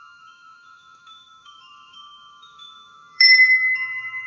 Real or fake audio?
fake